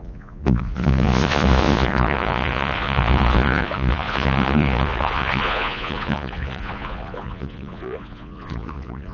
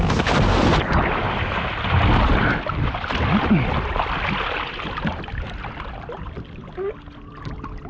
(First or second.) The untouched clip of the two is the second